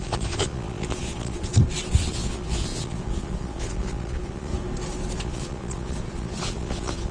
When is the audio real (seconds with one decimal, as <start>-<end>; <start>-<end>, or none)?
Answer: 1.5-2.1; 4.5-5.2